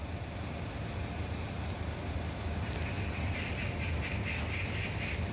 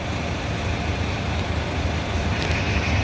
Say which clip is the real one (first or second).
first